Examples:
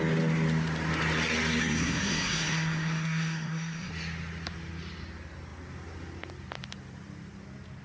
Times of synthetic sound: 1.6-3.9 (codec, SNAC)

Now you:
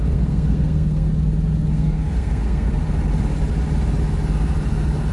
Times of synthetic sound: 0.0-1.1 (codec, SNAC); 1.7-2.8

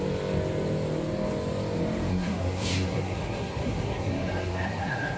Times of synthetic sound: 2.1-5.2 (codec, SNAC)

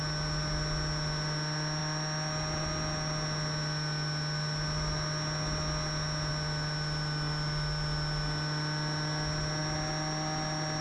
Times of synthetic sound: none